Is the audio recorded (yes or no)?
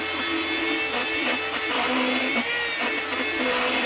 yes